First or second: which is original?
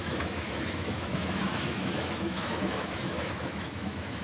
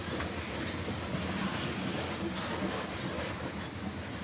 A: second